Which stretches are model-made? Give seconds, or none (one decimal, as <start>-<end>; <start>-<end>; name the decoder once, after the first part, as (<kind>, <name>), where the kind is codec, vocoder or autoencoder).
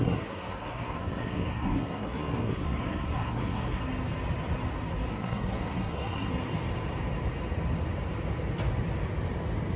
0.0-3.8 (codec, SNAC); 5.1-6.3